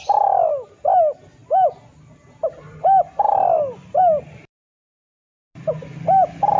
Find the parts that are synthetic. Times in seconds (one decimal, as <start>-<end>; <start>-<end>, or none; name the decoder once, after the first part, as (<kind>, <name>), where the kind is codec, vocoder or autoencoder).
none